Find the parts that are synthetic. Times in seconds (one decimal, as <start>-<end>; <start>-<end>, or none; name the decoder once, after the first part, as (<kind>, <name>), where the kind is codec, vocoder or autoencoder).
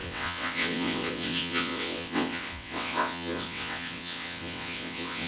0.0-5.3 (vocoder, WaveNeXt)